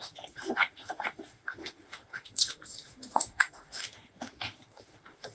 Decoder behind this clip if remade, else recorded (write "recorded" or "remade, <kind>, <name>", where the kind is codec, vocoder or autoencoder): remade, autoencoder, DAC-VAE